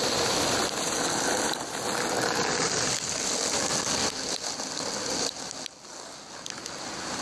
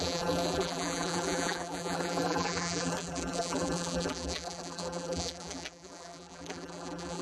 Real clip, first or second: first